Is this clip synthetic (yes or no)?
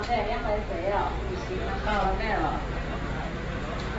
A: no